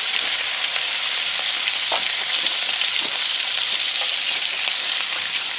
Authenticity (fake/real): fake